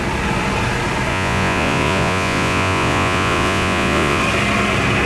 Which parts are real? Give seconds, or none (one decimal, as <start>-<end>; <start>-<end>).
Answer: 0.0-1.1; 4.2-5.1